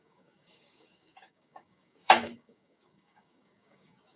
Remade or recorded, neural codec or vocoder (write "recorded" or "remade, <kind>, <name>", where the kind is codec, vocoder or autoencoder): remade, codec, DAC